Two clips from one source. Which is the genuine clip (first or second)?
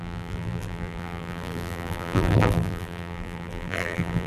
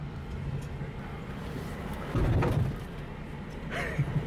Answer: second